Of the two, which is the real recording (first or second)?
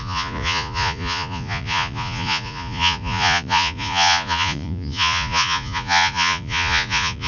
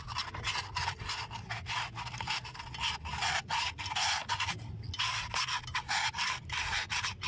second